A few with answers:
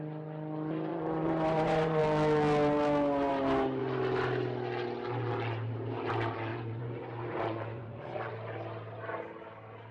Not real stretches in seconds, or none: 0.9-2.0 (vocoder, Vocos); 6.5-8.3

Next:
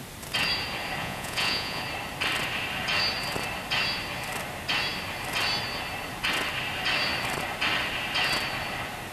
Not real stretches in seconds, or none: 1.0-1.8 (vocoder, Vocos)

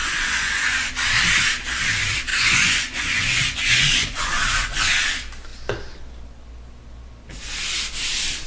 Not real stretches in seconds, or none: 0.0-0.9 (vocoder, Vocos); 2.3-4.8